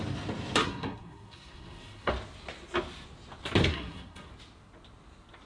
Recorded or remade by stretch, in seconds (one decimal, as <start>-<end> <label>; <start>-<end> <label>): 0.0-0.6 recorded; 0.6-2.1 remade; 2.1-3.7 recorded; 3.7-4.3 remade; 4.3-5.5 recorded